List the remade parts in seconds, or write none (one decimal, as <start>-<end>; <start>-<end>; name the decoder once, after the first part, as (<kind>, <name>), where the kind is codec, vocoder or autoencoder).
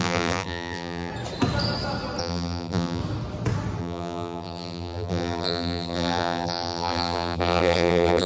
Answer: 0.0-1.1 (vocoder, BigVGAN v2); 2.2-3.0; 3.8-8.3